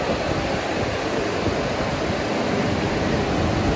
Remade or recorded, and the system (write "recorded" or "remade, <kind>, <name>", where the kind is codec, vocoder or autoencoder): recorded